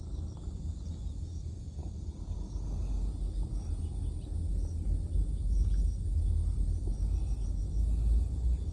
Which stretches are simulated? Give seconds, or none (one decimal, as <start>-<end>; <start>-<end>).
none